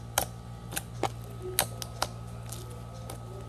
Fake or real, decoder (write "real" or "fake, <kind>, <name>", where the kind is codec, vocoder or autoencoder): real